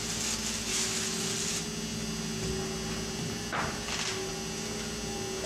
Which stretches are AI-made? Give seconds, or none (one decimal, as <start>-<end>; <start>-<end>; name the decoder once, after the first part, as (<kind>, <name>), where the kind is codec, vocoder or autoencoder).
0.7-1.3 (autoencoder, DAC-VAE)